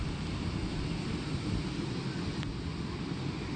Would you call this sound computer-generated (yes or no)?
no